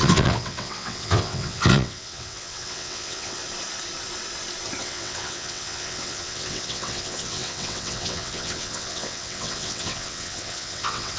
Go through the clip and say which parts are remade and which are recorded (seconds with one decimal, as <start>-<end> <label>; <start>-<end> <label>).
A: 0.0-3.4 remade; 3.4-4.8 recorded; 4.8-11.2 remade

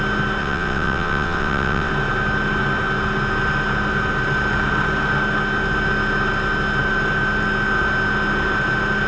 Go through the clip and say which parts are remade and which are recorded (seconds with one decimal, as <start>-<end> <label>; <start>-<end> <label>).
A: 0.0-0.4 recorded; 0.4-1.9 remade; 1.9-9.1 recorded

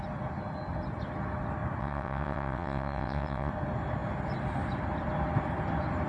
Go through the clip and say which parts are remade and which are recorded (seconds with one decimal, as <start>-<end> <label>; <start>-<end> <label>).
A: 0.0-1.8 recorded; 1.8-3.5 remade; 3.5-6.1 recorded

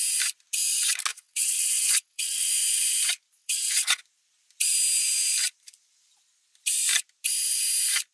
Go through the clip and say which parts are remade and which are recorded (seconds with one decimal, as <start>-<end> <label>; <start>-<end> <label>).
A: 0.0-1.1 recorded; 1.1-2.5 remade; 2.5-3.4 recorded; 3.4-4.0 remade; 4.0-8.1 recorded

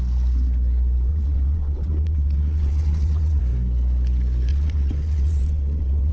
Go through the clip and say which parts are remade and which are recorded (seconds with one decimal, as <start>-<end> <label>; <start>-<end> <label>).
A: 0.0-1.1 recorded; 1.1-3.4 remade; 3.4-4.5 recorded; 4.5-6.1 remade

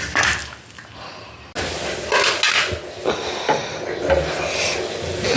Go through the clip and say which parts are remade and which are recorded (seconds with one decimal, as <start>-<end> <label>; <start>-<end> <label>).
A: 0.0-5.4 recorded

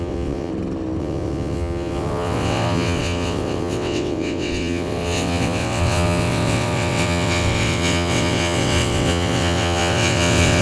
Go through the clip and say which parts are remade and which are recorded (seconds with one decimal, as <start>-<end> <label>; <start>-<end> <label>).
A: 0.0-0.5 remade; 0.5-1.0 recorded; 1.0-10.6 remade

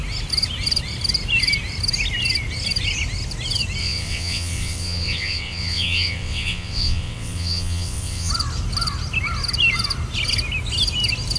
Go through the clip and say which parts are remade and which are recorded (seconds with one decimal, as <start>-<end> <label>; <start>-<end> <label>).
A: 0.0-3.8 recorded; 3.8-8.3 remade; 8.3-11.4 recorded